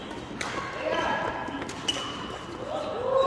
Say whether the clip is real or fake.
real